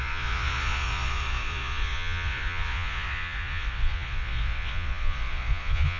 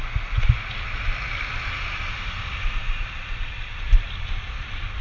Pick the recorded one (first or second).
second